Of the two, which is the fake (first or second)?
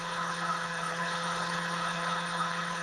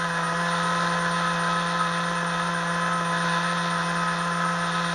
first